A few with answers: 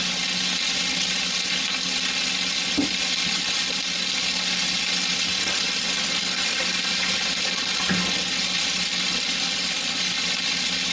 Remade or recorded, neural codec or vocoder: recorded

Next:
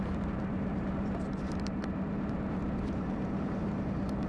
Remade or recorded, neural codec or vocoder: remade, vocoder, BigVGAN v2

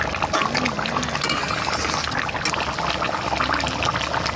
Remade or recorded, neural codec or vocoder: recorded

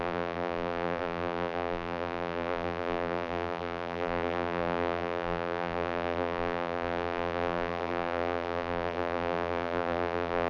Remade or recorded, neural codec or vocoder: remade, vocoder, BigVGAN v2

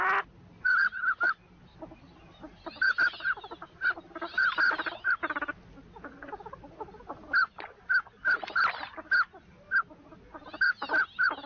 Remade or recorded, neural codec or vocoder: recorded